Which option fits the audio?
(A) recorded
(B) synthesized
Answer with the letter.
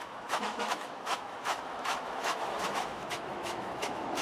B